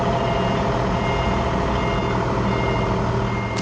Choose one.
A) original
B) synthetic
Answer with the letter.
A